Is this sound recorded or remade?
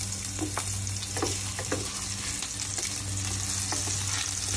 recorded